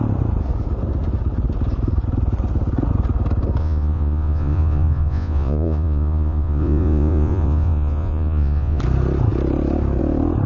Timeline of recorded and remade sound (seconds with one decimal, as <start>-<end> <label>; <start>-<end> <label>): 0.0-3.6 recorded; 3.6-8.8 remade; 8.8-10.5 recorded